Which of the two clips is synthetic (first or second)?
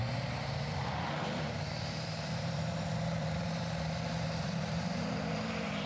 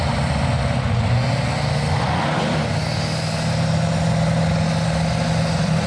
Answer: first